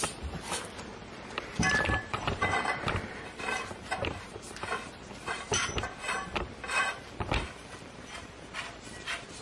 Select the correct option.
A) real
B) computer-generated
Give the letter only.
B